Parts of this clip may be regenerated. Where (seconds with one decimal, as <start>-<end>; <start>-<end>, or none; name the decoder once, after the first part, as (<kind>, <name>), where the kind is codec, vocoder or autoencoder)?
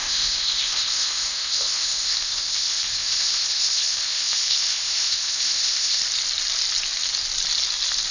0.0-6.0 (codec, ZipCodec)